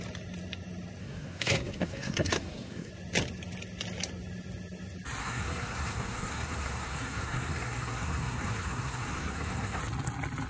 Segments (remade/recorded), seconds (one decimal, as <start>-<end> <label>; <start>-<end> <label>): 0.0-1.0 recorded; 1.0-2.9 remade; 2.9-5.2 recorded; 5.2-9.8 remade; 9.8-10.5 recorded